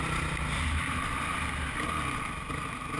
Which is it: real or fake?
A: real